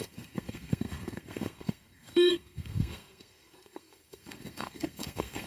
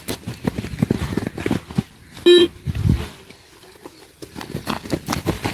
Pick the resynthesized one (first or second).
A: first